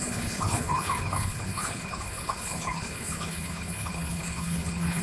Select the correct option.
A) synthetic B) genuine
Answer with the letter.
A